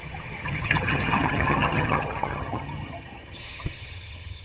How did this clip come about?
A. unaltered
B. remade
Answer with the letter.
B